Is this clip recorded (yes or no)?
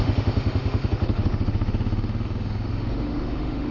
no